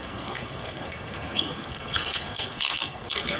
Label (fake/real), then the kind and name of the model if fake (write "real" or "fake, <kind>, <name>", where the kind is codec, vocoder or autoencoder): fake, codec, SNAC